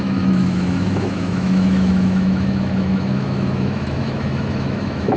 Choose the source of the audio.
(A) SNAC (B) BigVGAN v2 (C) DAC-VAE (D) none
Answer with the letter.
C